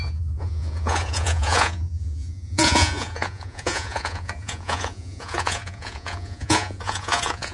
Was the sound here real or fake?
fake